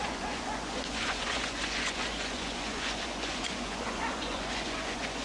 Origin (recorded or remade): remade